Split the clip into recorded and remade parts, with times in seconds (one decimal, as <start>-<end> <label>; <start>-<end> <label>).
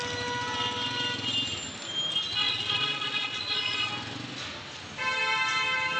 0.0-2.4 recorded; 2.4-3.9 remade; 3.9-6.0 recorded